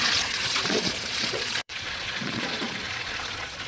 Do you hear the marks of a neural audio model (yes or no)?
yes